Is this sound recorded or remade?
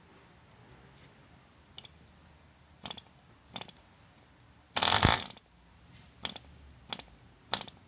recorded